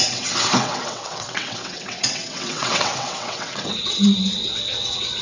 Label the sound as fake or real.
fake